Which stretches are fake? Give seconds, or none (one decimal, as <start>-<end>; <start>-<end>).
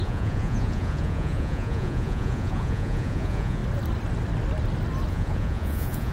0.0-3.6; 5.1-6.1